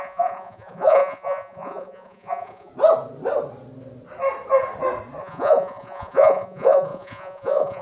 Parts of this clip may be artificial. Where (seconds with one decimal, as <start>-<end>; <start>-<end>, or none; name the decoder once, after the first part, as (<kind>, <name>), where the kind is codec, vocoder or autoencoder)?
0.0-2.7 (vocoder, Vocos); 5.2-7.8